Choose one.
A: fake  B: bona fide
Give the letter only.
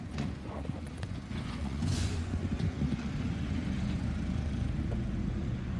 A